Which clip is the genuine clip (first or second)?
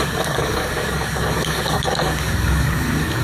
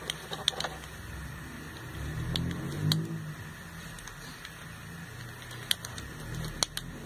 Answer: second